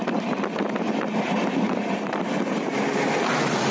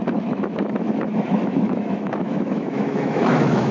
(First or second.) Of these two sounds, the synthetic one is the second